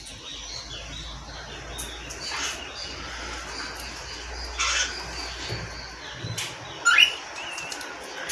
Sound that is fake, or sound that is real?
real